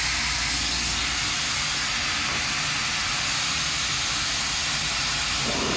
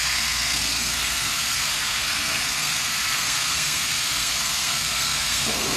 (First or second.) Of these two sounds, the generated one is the second